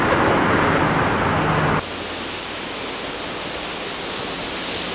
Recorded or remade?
recorded